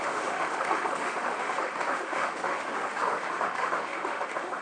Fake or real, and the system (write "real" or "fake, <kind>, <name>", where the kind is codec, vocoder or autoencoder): fake, autoencoder, DAC-VAE